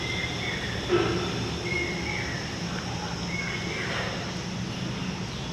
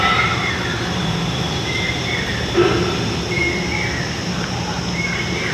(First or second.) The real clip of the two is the first